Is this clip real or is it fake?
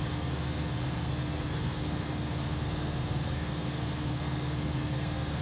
fake